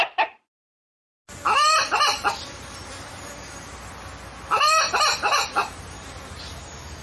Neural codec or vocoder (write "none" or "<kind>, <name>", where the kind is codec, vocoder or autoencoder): none